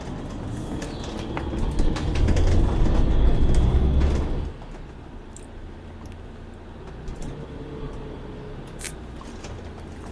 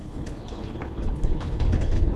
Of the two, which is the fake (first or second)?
second